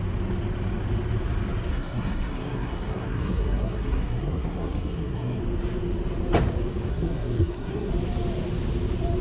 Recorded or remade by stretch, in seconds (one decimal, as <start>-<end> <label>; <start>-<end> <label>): 0.0-1.7 recorded; 1.7-5.4 remade; 5.4-6.9 recorded; 6.9-7.9 remade; 7.9-9.2 recorded